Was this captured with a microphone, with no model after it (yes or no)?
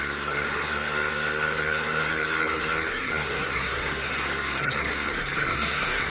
no